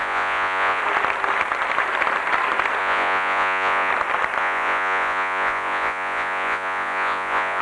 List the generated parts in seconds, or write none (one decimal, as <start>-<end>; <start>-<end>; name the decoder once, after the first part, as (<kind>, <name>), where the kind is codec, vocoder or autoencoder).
0.0-0.8 (vocoder, Vocos); 2.8-3.9; 4.4-7.6